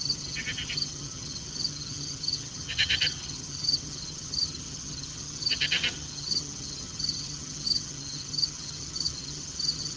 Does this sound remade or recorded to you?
remade